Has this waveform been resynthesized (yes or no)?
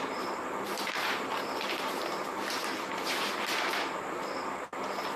yes